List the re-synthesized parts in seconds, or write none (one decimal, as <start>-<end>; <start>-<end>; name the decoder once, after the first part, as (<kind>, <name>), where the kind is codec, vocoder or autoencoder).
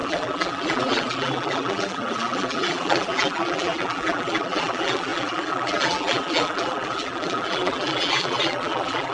0.0-9.1 (vocoder, BigVGAN v2)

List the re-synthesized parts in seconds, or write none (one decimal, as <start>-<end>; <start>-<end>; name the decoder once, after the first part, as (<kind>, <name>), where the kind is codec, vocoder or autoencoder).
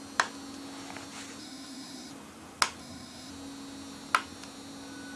1.4-2.1 (codec, SNAC); 2.8-3.3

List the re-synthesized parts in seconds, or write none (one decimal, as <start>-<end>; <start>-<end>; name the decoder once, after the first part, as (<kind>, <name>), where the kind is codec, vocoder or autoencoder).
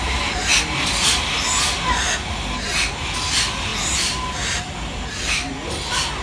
none